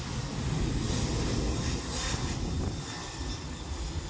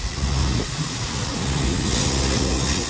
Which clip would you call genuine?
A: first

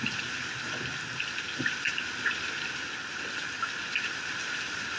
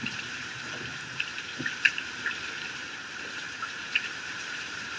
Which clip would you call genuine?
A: first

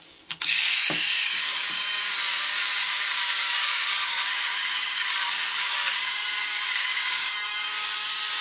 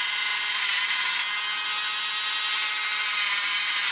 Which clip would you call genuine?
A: second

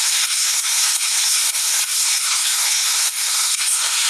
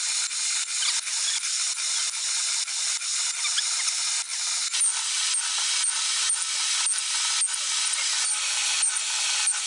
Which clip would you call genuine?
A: second